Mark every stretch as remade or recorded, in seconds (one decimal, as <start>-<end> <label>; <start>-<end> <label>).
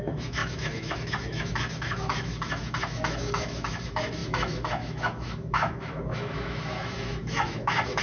0.0-8.0 remade